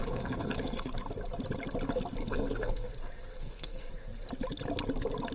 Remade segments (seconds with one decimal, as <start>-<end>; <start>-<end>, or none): 0.0-0.9; 2.2-2.9; 3.3-3.9